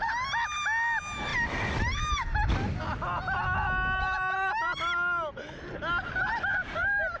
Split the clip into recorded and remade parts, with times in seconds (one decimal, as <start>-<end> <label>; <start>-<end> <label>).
0.0-7.2 recorded